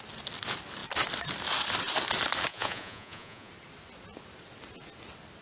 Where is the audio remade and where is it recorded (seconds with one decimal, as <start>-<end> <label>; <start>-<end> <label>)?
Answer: 0.0-2.5 recorded; 2.5-3.5 remade; 3.5-5.4 recorded